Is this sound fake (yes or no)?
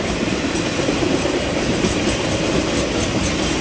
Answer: no